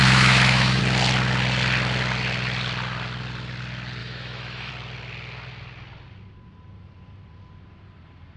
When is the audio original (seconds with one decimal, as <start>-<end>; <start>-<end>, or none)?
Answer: 0.8-4.0; 4.7-8.4